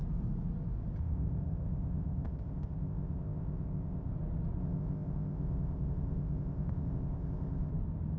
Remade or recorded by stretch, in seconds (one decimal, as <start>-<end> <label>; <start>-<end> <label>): 0.0-1.0 recorded; 1.0-4.1 remade; 4.1-4.6 recorded; 4.6-7.7 remade; 7.7-8.2 recorded